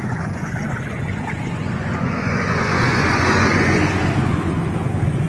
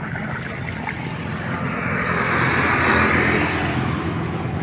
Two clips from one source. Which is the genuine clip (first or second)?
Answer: second